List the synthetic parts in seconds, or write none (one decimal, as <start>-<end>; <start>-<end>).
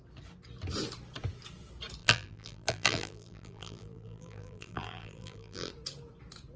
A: 2.0-5.7